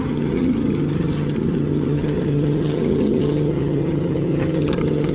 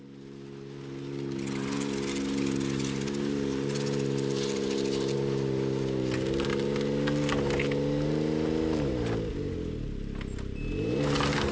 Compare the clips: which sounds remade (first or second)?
first